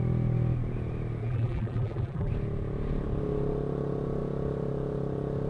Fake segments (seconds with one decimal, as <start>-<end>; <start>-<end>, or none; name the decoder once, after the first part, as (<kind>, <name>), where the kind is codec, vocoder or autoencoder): 1.2-2.3 (vocoder, BigVGAN v2)